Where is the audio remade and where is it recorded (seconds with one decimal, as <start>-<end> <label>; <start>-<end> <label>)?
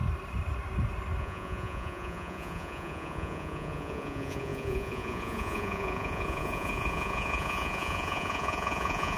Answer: 0.0-1.2 recorded; 1.2-9.2 remade